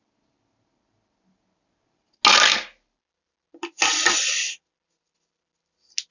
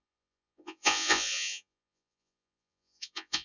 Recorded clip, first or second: first